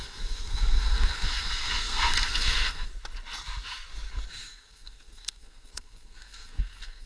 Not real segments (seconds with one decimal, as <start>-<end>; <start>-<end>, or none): 0.0-2.9; 4.3-7.1